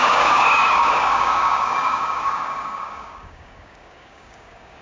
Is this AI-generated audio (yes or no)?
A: yes